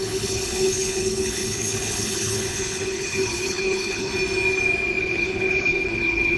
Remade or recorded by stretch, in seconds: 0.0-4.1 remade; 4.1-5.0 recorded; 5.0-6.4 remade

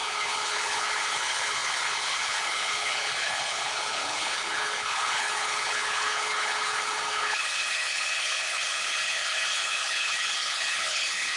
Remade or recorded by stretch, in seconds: 0.0-11.4 remade

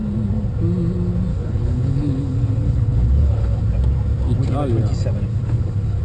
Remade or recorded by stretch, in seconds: 0.0-1.3 recorded; 1.3-3.6 remade; 3.6-5.3 recorded; 5.3-6.0 remade

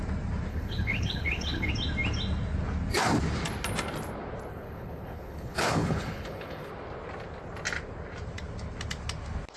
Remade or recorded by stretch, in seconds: 0.0-0.5 recorded; 0.5-1.7 remade; 1.7-4.5 recorded; 4.5-6.7 remade; 6.7-9.6 recorded

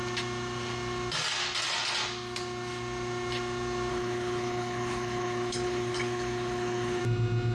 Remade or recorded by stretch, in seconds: 0.0-3.9 recorded; 3.9-7.0 remade; 7.0-7.5 recorded

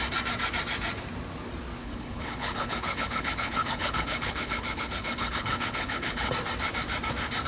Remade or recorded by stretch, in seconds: 0.0-1.8 recorded; 1.8-6.3 remade; 6.3-7.5 recorded

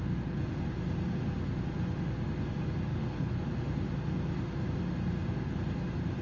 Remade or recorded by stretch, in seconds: 0.0-2.9 recorded; 2.9-3.4 remade; 3.4-6.2 recorded